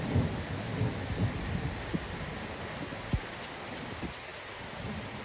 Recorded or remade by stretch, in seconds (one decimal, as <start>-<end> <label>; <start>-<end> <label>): 0.0-5.2 recorded